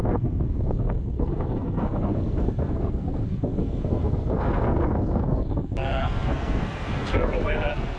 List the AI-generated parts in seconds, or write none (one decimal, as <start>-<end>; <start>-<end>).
0.0-8.0